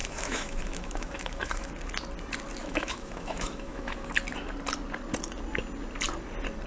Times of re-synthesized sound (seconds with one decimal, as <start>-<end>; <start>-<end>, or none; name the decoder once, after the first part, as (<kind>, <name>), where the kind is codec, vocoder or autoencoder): 0.0-1.7 (autoencoder, DAC-VAE); 2.6-4.1